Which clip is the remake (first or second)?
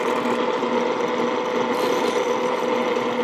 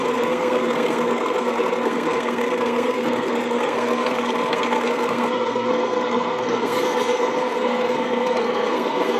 second